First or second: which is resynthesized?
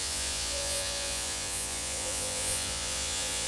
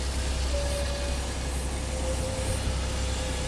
first